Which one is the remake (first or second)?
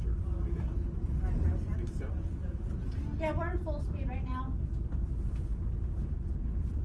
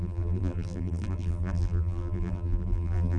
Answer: second